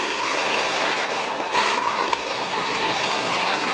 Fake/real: fake